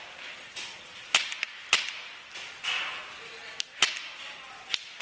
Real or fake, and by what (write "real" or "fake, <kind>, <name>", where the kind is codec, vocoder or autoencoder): real